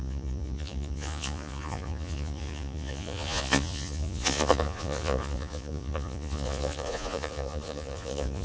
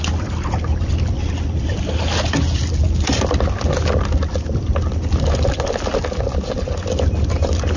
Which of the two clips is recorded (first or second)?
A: second